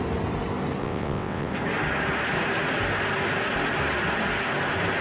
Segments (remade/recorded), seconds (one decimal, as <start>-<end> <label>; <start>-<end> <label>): 0.0-0.8 recorded; 0.8-1.5 remade; 1.5-5.0 recorded